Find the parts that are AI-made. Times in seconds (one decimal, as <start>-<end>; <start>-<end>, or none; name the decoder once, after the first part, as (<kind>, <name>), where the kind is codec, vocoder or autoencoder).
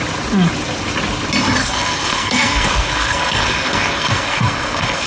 1.6-5.1 (codec, SNAC)